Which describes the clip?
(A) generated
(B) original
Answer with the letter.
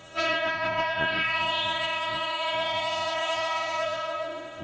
A